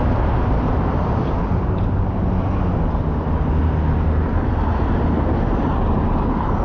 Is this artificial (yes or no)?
no